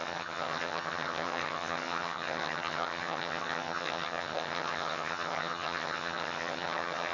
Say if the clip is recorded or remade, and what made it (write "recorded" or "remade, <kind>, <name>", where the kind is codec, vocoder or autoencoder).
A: remade, vocoder, HiFi-GAN